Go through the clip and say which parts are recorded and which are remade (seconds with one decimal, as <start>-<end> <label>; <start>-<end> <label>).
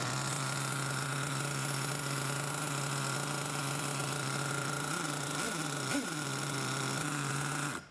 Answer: 0.0-4.0 recorded; 4.0-7.3 remade; 7.3-7.9 recorded